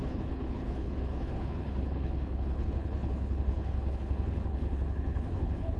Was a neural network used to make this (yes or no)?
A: yes